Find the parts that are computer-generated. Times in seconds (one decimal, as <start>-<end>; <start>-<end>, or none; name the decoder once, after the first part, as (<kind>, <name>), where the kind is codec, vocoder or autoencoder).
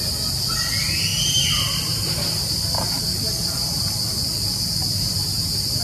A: none